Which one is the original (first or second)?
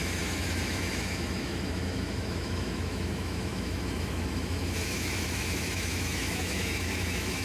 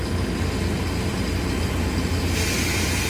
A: second